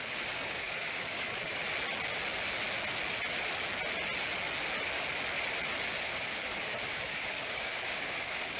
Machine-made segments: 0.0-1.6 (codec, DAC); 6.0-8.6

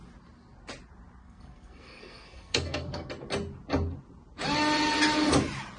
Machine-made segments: 1.2-3.1 (codec, SNAC)